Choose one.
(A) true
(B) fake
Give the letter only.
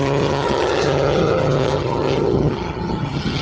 B